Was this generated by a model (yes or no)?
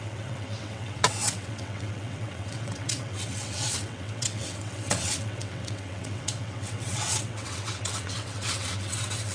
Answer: yes